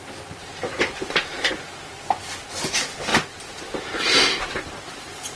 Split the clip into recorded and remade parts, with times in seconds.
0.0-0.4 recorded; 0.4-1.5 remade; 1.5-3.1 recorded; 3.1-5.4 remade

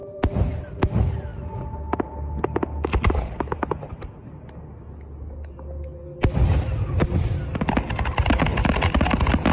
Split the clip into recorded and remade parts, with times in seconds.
0.0-9.5 recorded

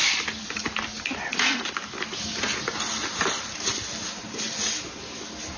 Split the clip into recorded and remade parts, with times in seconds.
0.0-5.6 recorded

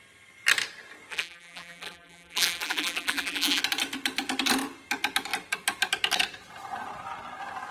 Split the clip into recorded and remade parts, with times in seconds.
0.0-1.1 recorded; 1.1-3.6 remade; 3.6-7.7 recorded